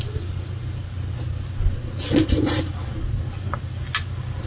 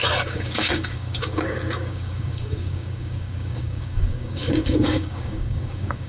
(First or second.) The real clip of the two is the first